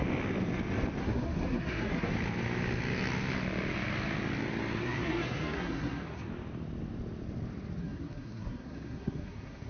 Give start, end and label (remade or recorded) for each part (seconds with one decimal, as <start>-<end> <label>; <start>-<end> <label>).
0.0-1.0 recorded; 1.0-2.1 remade; 2.1-4.8 recorded; 4.8-6.3 remade; 6.3-7.8 recorded; 7.8-9.7 remade